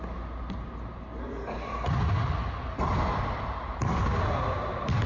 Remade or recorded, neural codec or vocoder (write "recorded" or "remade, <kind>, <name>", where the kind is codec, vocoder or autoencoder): recorded